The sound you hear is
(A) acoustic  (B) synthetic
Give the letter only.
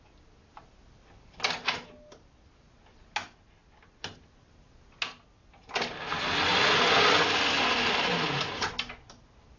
A